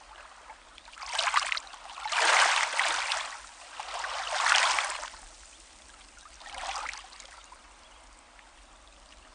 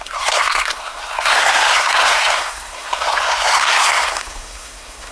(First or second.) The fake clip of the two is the second